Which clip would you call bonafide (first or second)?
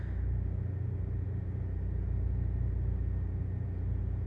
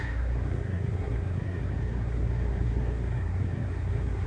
first